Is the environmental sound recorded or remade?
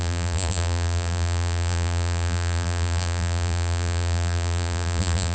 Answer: remade